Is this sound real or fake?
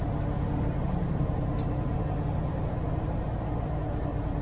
real